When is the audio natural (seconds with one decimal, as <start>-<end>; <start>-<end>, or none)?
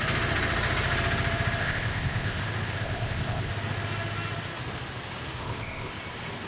0.0-1.6; 2.4-2.8; 3.5-5.4; 5.9-6.5